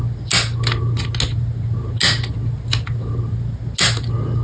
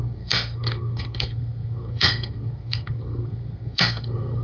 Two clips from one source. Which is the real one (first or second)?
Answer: first